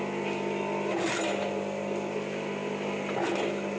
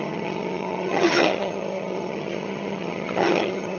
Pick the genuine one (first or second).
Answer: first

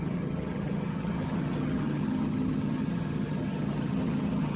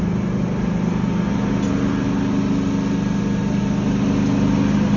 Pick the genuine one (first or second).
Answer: second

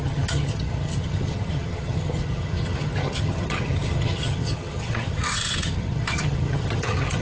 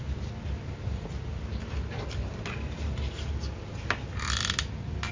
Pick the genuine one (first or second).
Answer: second